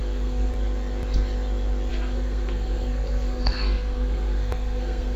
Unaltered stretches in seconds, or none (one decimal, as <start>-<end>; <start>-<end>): 0.5-1.9